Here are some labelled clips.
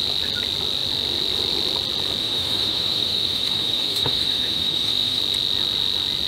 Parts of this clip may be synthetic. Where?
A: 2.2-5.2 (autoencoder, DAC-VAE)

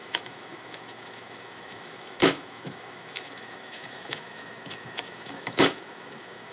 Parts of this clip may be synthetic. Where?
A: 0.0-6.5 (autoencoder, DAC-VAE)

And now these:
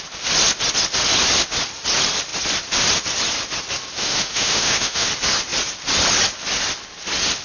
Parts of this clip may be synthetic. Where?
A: 4.0-5.1 (autoencoder, DAC-VAE)

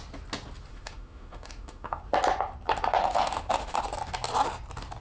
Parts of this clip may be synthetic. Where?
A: 0.7-2.0 (autoencoder, DAC-VAE); 3.0-3.8

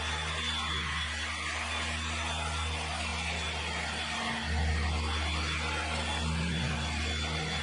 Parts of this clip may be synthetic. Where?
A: none

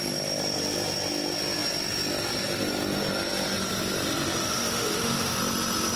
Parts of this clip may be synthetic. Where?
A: 4.4-5.4 (autoencoder, DAC-VAE)